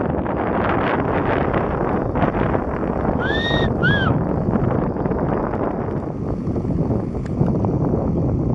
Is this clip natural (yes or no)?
yes